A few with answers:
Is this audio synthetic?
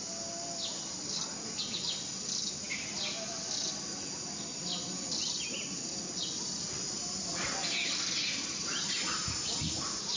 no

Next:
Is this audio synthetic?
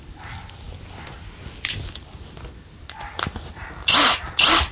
no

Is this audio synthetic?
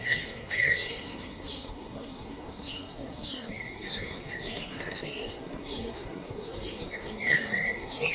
yes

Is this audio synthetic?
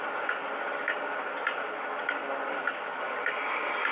no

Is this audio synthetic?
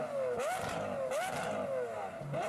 no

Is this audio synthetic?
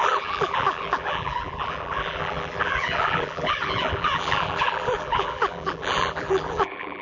yes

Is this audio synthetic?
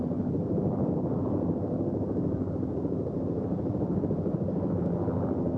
no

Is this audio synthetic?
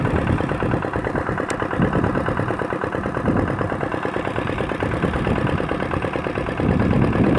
no